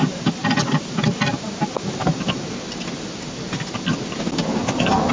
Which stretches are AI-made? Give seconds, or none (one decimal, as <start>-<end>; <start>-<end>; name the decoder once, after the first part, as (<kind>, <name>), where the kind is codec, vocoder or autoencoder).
0.0-2.0 (vocoder, BigVGAN v2)